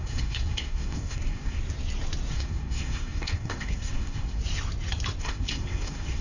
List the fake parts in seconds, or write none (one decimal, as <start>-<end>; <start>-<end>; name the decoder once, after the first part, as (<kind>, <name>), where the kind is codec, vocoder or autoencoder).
0.0-1.6 (codec, SNAC); 2.3-4.4; 5.2-6.2